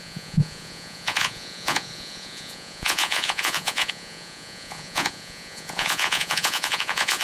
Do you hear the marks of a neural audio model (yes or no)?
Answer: yes